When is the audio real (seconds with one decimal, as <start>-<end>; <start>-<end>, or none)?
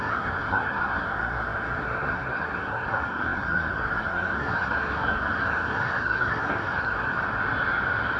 7.2-8.2